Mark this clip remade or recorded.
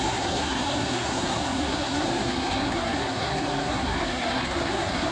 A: remade